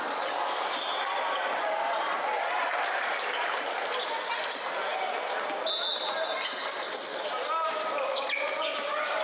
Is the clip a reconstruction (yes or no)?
no